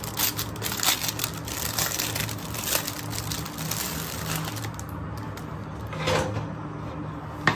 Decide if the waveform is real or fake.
real